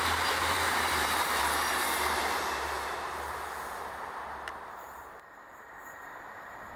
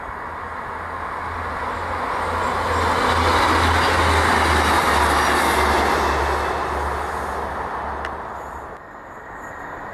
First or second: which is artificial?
first